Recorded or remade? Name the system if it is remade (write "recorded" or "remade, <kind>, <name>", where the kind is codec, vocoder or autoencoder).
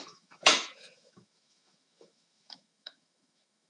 remade, autoencoder, DAC-VAE